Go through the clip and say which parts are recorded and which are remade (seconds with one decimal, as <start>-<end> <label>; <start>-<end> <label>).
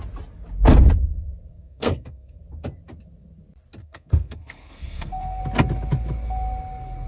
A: 0.0-1.5 recorded; 1.5-2.4 remade; 2.4-3.8 recorded; 3.8-5.4 remade; 5.4-7.1 recorded